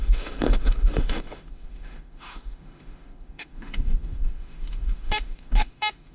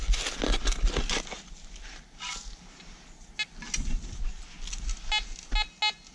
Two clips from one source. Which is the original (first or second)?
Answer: second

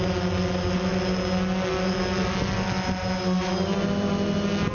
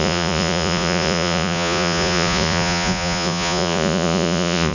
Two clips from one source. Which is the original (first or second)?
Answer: first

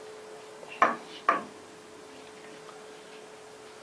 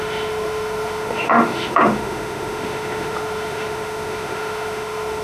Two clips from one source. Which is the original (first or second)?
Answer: first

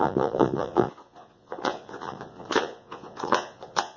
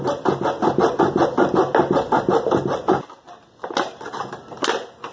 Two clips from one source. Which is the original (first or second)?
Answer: second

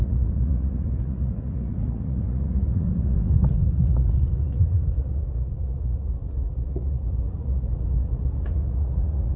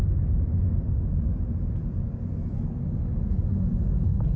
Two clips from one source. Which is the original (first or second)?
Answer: second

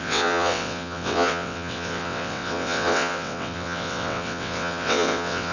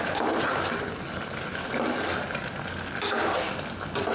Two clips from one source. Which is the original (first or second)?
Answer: second